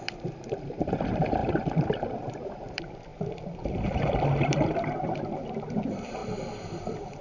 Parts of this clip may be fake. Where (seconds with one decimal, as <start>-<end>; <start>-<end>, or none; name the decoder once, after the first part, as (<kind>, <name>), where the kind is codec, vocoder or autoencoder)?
0.0-6.2 (vocoder, BigVGAN v2); 6.8-7.2

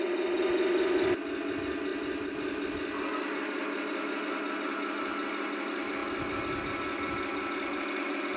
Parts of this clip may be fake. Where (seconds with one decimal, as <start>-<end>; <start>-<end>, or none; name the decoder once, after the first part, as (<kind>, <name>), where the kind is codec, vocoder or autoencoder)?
none

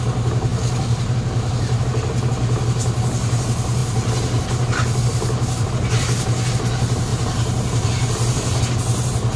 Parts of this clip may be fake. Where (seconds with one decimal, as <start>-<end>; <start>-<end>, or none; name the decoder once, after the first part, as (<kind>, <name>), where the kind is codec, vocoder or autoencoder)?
0.5-1.8 (vocoder, BigVGAN v2); 3.8-5.7; 7.1-8.6

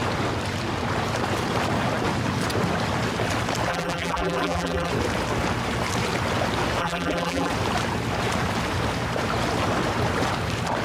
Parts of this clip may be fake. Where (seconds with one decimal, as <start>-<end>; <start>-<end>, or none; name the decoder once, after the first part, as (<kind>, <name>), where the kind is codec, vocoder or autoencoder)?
3.7-4.9 (vocoder, BigVGAN v2); 6.8-7.5

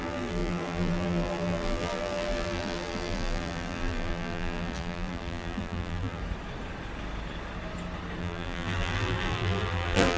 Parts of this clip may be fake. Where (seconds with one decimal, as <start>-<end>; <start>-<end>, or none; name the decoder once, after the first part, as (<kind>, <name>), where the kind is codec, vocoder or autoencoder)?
0.0-6.2 (vocoder, BigVGAN v2); 8.2-10.2

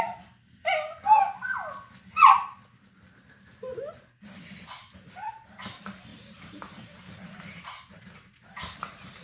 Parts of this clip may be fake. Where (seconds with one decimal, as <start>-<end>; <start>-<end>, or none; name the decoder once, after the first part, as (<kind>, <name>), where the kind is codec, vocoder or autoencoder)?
6.1-9.2 (vocoder, BigVGAN v2)

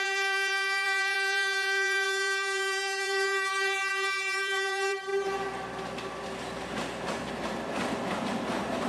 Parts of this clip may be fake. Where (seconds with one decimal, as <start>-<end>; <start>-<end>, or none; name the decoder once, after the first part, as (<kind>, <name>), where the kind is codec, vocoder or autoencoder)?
0.0-5.1 (vocoder, BigVGAN v2); 7.3-8.9